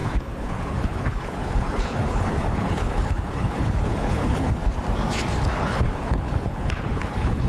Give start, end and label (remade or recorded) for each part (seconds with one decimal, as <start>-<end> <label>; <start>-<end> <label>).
0.0-4.6 remade; 4.6-5.6 recorded; 5.6-7.5 remade